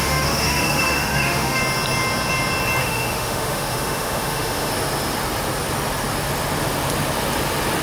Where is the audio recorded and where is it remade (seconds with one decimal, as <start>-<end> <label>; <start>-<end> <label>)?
0.0-1.6 remade; 1.6-2.8 recorded; 2.8-4.7 remade; 4.7-7.8 recorded